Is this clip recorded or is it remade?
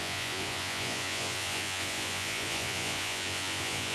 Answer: remade